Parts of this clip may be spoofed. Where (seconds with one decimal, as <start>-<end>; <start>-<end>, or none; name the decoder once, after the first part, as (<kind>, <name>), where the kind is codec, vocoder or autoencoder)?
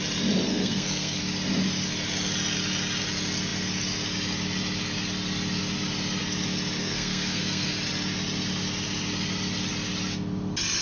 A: 0.5-1.2 (codec, SNAC); 6.8-7.7